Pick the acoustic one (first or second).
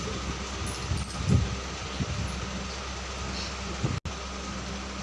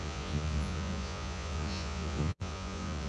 first